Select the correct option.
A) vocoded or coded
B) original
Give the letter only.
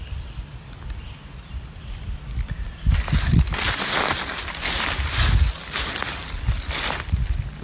B